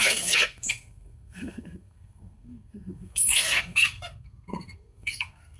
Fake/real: fake